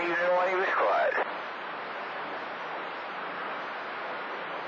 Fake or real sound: real